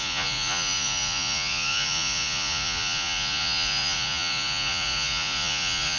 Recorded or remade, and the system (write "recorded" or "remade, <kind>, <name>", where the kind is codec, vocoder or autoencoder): remade, vocoder, Vocos